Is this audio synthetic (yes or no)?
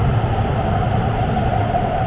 no